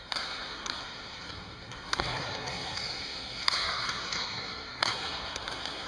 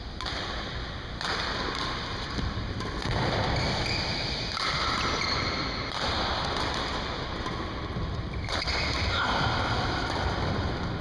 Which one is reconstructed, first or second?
first